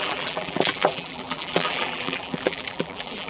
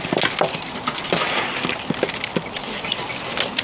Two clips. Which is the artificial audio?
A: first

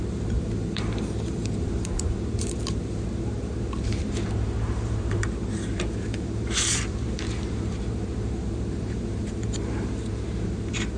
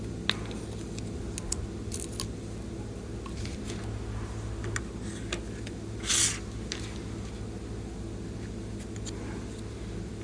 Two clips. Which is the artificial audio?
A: first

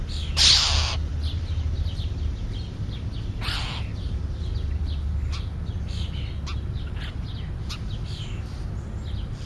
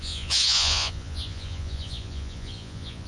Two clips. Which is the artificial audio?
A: second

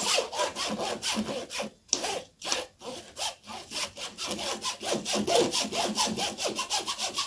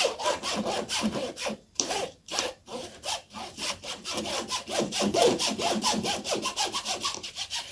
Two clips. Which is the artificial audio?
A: second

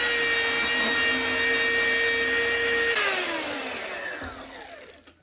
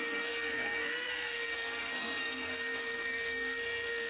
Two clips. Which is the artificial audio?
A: second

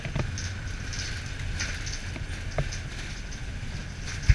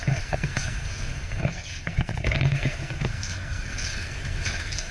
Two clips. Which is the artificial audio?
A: second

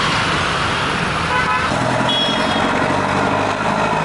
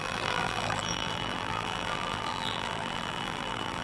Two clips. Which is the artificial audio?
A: second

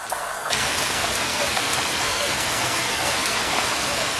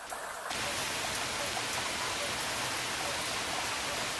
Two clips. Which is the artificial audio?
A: first